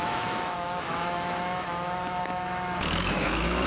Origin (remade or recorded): remade